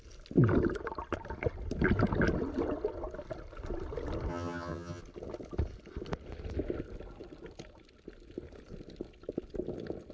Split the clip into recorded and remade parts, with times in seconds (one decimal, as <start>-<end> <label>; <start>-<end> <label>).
0.0-4.3 recorded; 4.3-5.0 remade; 5.0-10.1 recorded